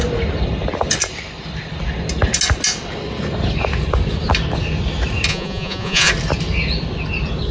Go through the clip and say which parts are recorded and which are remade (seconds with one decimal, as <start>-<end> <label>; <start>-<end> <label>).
0.0-5.3 recorded; 5.3-6.1 remade; 6.1-7.5 recorded